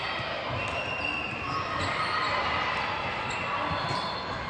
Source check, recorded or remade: recorded